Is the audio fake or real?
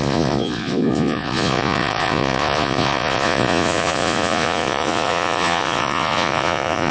fake